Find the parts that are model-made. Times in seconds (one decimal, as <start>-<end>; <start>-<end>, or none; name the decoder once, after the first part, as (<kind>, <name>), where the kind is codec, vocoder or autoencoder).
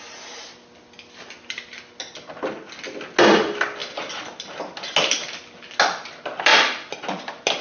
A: none